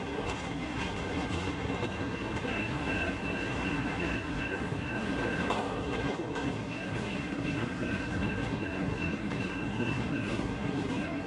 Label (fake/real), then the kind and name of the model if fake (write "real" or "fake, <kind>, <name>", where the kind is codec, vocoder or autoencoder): fake, codec, SNAC